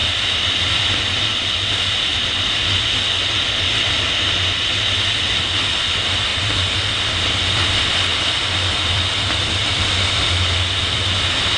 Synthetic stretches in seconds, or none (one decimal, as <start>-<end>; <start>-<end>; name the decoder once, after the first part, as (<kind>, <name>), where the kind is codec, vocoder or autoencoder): 0.0-1.0 (vocoder, BigVGAN v2); 8.1-11.6